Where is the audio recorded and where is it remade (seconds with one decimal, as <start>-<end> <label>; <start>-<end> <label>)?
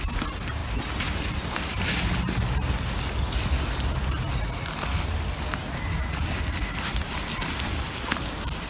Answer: 0.0-8.7 recorded